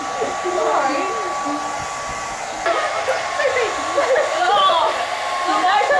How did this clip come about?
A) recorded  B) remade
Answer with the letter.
A